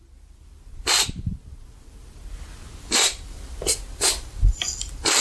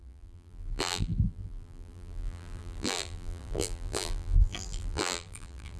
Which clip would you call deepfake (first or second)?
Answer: second